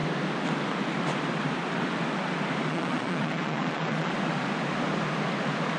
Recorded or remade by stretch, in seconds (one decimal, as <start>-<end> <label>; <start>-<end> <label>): 0.0-2.7 recorded; 2.7-4.1 remade; 4.1-5.8 recorded